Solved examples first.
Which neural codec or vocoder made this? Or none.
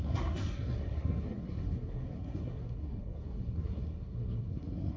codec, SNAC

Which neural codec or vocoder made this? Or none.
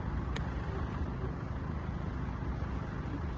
none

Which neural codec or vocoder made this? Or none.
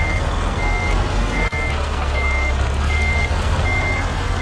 codec, SNAC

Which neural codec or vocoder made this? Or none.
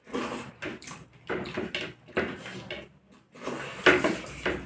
none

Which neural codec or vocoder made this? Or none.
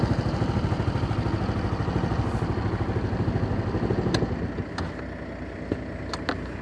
none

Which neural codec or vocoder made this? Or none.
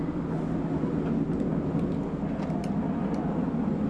none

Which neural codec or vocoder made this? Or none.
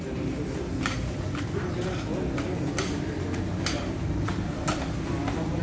none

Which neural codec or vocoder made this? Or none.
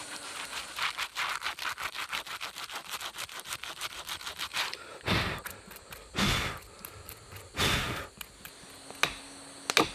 none